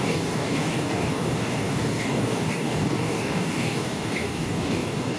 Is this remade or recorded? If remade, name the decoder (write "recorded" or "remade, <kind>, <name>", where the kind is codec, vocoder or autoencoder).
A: remade, codec, DAC